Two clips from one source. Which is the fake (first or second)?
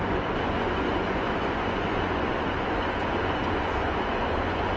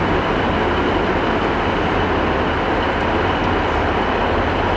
first